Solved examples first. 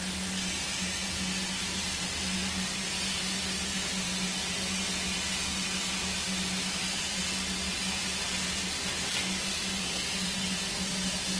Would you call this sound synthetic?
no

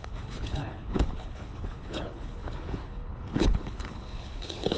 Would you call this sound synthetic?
yes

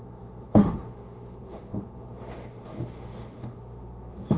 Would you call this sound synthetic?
yes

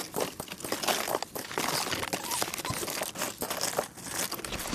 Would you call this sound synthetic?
no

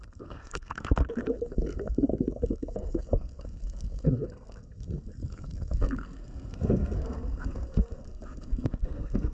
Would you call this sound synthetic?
yes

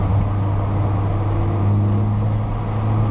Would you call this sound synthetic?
no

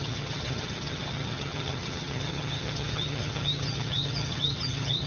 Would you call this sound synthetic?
yes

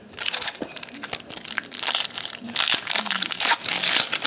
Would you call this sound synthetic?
no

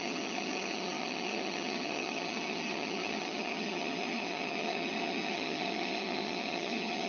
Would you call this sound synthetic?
yes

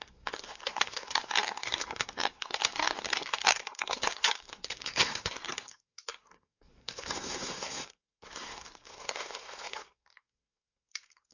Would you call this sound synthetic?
yes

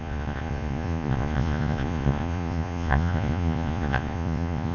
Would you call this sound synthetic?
yes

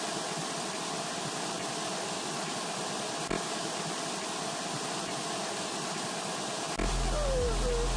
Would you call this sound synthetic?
no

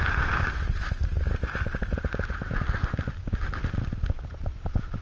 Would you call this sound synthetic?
yes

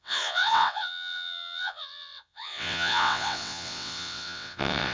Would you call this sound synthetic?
yes